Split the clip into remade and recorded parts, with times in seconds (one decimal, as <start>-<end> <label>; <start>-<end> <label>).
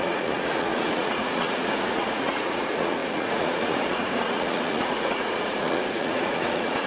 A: 0.0-6.9 remade